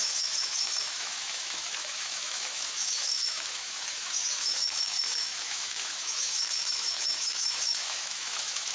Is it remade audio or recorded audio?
remade